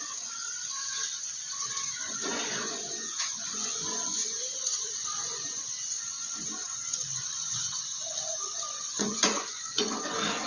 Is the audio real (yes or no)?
no